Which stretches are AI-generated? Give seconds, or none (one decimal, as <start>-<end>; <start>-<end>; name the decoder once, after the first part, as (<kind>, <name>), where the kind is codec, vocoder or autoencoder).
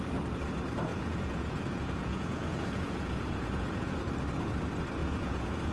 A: 0.9-4.0 (vocoder, Vocos); 5.0-5.7